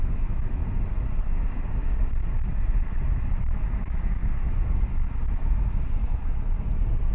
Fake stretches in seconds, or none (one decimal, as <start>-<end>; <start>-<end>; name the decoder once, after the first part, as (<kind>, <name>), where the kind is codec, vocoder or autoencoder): 0.0-0.6 (autoencoder, DAC-VAE); 3.4-4.2